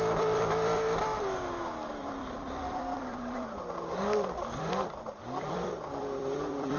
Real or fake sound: fake